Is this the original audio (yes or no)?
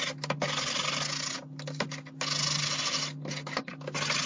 yes